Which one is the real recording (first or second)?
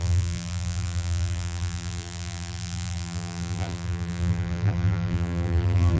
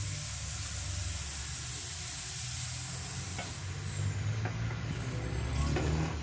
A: second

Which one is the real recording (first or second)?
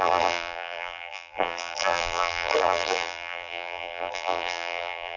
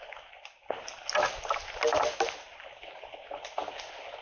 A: second